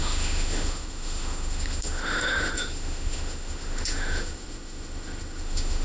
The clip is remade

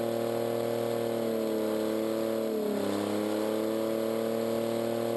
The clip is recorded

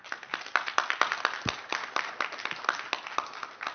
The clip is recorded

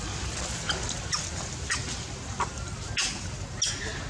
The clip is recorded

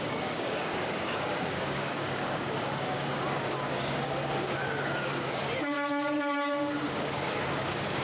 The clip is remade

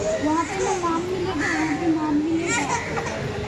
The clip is recorded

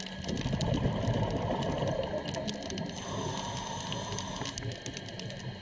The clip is recorded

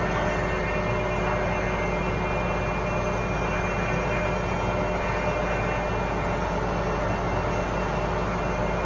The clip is recorded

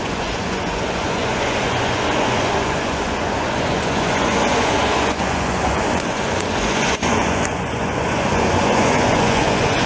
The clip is remade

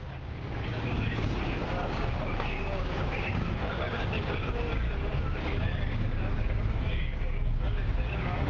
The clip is remade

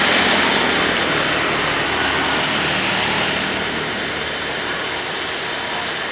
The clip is recorded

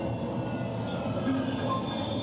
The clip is recorded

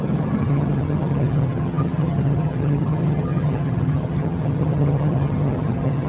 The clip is remade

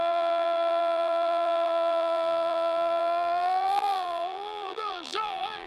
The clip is remade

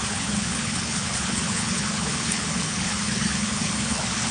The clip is remade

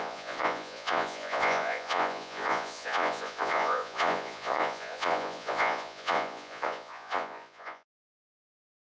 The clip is remade